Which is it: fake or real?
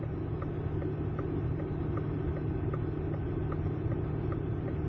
real